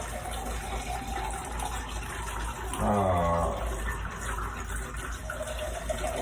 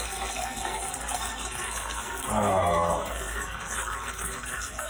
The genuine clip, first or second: first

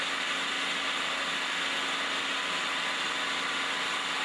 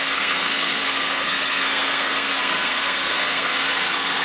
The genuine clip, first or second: first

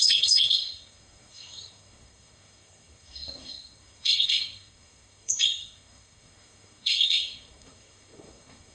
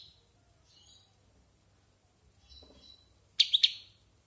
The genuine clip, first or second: second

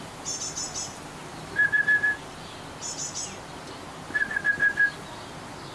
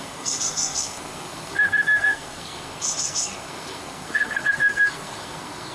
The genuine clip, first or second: first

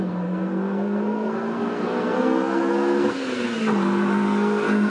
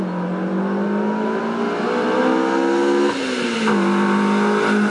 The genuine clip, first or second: second